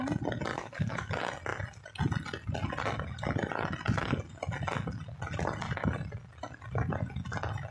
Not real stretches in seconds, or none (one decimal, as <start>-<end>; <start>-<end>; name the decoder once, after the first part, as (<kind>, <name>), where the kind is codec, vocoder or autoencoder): 0.5-1.1 (codec, DAC)